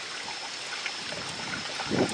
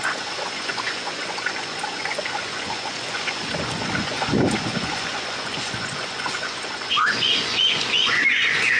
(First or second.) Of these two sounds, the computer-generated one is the second